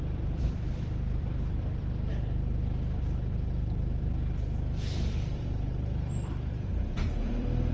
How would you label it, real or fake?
fake